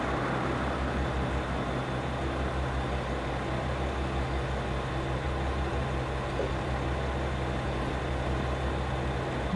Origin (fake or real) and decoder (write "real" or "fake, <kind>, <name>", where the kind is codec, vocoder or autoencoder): real